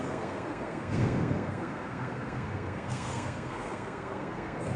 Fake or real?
fake